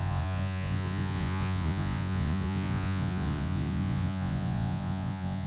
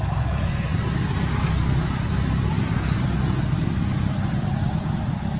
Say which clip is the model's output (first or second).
first